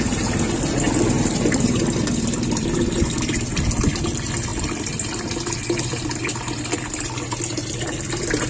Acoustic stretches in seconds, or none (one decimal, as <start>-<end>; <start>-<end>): 0.0-8.5